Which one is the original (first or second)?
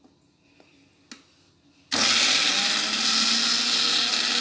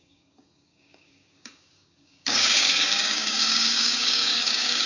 first